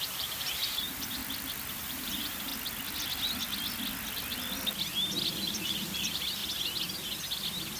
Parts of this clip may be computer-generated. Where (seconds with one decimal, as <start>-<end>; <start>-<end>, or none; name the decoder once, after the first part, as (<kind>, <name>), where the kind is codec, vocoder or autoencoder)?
0.0-1.2 (vocoder, BigVGAN v2); 1.7-2.5; 5.3-6.4